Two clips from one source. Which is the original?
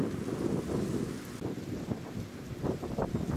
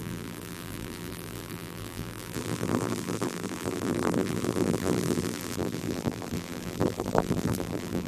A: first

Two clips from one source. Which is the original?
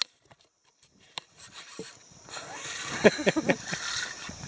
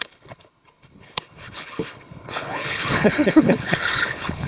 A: first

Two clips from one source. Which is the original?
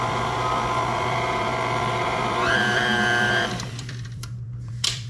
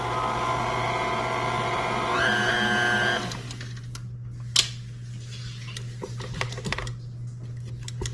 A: second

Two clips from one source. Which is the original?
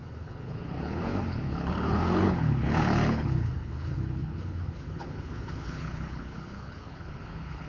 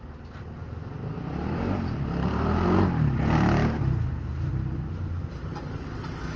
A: second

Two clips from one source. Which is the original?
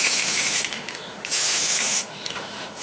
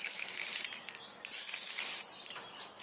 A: second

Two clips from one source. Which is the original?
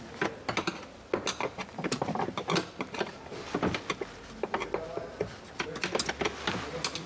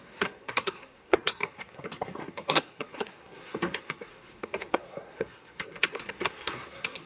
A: first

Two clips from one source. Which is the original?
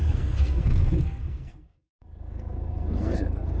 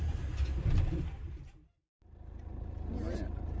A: second